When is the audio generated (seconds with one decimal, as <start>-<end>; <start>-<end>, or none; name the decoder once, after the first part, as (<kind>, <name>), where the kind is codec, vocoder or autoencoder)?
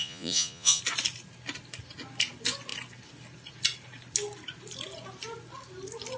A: 0.0-0.8 (vocoder, Vocos)